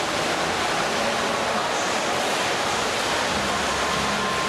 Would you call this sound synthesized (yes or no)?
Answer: no